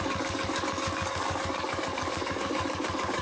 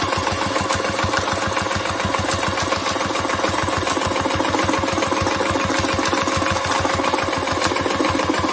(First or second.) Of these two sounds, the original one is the second